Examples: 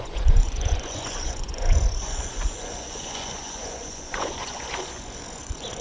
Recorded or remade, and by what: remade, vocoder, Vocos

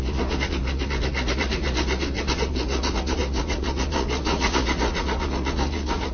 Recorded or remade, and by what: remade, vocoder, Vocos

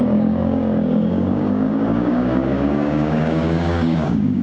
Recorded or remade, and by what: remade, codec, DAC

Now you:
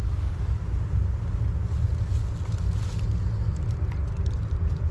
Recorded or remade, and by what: recorded